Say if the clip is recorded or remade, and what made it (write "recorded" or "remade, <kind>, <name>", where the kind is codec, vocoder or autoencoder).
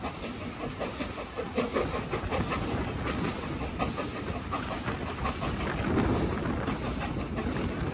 recorded